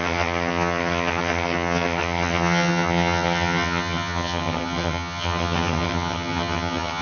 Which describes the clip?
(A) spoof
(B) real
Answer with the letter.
A